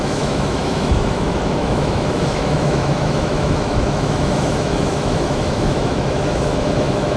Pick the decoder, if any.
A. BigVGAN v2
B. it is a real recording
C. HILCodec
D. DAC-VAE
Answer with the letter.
D